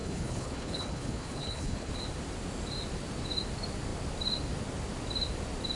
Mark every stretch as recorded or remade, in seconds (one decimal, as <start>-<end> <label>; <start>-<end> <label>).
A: 0.0-1.9 remade; 1.9-5.8 recorded